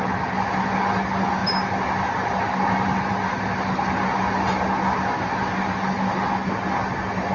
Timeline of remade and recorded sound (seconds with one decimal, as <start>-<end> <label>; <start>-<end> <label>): 0.0-7.3 recorded